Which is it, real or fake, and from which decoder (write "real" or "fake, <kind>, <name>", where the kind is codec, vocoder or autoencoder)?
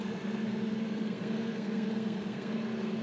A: fake, codec, SNAC